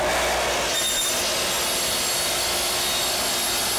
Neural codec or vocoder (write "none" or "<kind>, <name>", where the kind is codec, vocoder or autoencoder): none